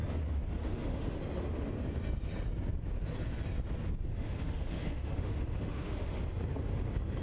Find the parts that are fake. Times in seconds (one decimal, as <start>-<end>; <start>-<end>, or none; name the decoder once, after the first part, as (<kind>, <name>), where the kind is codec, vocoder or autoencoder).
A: 0.6-1.2 (autoencoder, DAC-VAE); 4.1-6.2